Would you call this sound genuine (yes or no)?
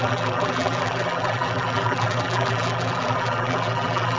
no